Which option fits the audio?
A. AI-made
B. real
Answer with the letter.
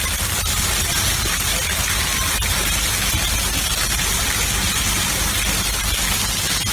B